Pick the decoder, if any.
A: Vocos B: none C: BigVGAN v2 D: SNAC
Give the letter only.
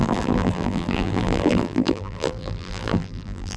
C